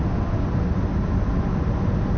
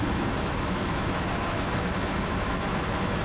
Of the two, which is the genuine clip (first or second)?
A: first